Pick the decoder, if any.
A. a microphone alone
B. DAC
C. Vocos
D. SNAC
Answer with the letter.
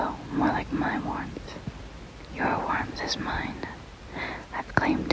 A